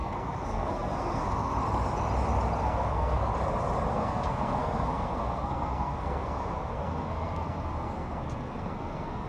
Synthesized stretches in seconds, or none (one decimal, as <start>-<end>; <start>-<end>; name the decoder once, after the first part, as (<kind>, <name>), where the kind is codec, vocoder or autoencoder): 0.0-1.5 (codec, SNAC); 2.6-3.3; 3.9-9.3